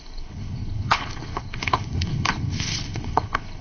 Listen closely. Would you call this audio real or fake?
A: fake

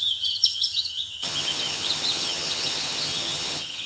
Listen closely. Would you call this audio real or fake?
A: fake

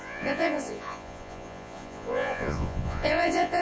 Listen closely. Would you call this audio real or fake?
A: fake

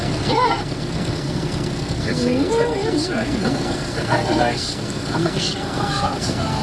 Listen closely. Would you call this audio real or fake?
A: fake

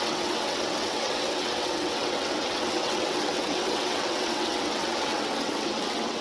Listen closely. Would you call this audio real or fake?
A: fake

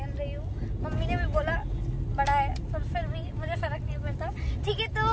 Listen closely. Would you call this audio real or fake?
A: real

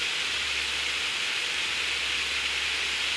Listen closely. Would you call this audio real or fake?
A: real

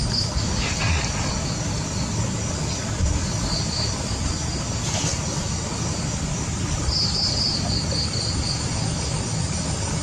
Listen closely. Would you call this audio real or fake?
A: real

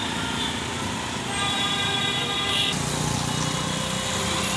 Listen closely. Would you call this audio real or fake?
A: real